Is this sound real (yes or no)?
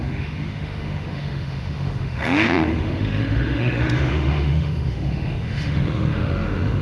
no